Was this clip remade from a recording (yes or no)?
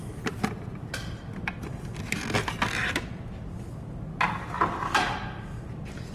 no